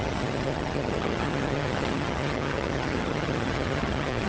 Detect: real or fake fake